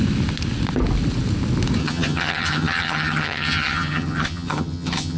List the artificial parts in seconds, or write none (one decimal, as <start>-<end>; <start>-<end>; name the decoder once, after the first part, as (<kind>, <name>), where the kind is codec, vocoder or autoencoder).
1.8-5.2 (vocoder, HiFi-GAN)